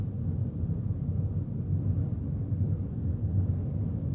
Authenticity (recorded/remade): remade